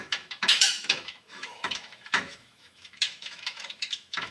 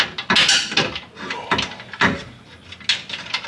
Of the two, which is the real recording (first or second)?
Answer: second